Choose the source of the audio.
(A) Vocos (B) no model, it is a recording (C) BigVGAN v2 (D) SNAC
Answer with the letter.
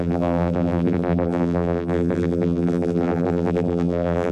C